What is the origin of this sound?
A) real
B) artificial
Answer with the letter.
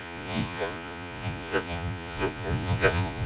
B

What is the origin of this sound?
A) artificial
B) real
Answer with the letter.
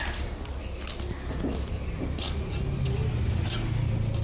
B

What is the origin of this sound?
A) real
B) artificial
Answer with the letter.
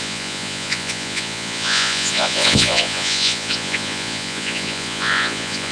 B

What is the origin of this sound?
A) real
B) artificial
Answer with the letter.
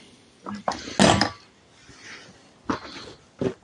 A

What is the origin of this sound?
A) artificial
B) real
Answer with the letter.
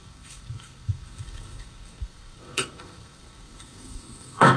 A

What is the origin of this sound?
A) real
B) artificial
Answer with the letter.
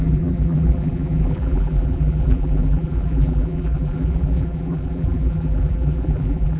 B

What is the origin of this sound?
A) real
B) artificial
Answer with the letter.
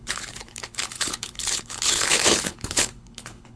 B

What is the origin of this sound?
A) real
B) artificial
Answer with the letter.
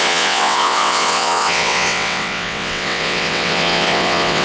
B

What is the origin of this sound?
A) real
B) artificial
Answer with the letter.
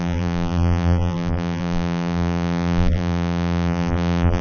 B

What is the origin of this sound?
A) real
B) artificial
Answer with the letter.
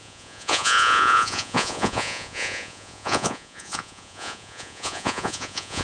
B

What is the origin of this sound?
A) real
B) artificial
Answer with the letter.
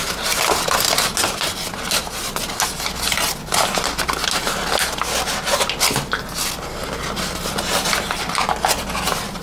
A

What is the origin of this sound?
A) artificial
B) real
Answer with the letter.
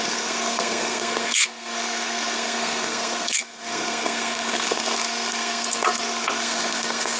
A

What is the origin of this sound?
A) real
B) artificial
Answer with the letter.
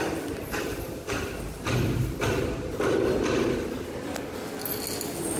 A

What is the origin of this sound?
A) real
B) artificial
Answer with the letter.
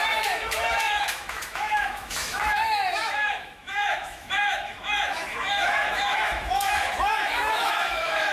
B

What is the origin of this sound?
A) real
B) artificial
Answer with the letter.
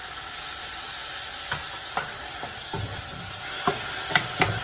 A